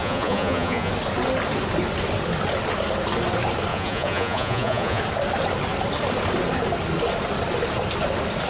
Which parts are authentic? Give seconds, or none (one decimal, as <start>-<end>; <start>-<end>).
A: 0.9-3.7; 5.0-8.5